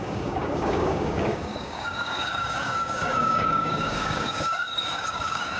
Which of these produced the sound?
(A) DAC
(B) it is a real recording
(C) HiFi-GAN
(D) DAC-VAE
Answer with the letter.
A